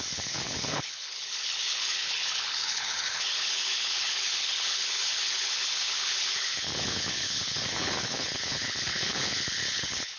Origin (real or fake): fake